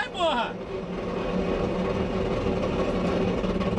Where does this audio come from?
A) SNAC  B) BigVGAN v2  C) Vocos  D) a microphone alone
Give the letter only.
D